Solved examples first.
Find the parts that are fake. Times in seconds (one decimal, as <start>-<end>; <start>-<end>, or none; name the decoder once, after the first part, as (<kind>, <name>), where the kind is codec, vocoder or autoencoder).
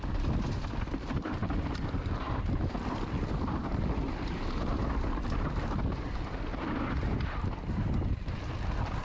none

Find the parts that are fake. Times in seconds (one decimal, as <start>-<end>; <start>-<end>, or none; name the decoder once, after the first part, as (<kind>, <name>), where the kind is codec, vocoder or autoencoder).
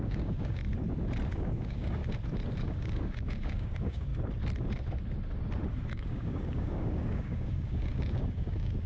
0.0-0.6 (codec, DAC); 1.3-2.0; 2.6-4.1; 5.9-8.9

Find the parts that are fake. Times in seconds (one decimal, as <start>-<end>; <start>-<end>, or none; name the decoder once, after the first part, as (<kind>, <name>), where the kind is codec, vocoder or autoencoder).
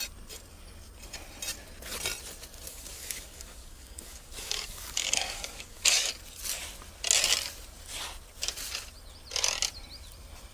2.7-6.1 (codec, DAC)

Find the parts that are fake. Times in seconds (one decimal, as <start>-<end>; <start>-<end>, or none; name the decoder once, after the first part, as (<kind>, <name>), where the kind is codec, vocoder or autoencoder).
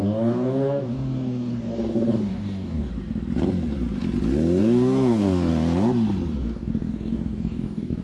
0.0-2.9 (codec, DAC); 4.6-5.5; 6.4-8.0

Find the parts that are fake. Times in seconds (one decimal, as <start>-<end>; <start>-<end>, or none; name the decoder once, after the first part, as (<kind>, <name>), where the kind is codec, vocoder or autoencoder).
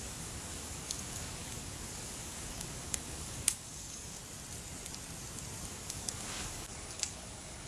0.0-4.2 (codec, DAC); 5.7-7.7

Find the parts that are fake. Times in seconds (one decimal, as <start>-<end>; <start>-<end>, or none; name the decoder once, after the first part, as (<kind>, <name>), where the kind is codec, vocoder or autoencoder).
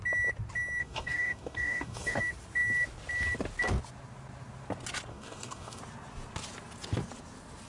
0.8-2.2 (codec, DAC); 5.1-5.8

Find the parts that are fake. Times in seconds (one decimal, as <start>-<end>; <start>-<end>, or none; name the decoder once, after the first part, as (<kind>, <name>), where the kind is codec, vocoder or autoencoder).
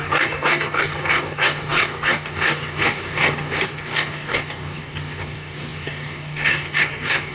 0.0-7.3 (codec, DAC)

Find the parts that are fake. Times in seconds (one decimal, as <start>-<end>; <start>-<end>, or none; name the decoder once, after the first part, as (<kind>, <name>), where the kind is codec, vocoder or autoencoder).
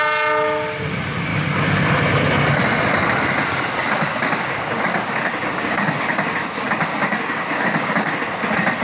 1.3-1.8 (codec, DAC); 3.5-8.2